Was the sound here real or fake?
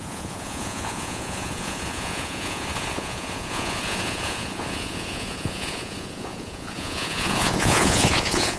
fake